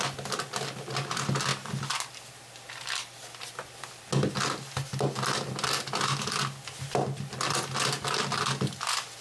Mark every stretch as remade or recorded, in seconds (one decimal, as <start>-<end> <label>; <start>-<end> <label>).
0.0-9.2 recorded